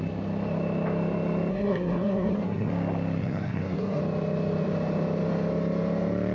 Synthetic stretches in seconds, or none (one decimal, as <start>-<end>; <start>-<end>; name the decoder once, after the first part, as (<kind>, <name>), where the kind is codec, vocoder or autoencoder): 1.5-2.7 (codec, SNAC); 3.2-4.0